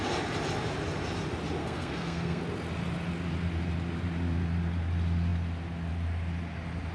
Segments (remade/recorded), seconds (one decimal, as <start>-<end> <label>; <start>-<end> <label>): 0.0-1.6 recorded; 1.6-2.4 remade; 2.4-6.9 recorded